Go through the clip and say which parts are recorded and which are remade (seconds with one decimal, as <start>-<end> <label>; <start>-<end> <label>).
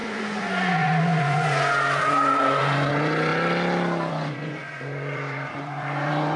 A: 0.0-3.3 remade; 3.3-4.1 recorded; 4.1-6.4 remade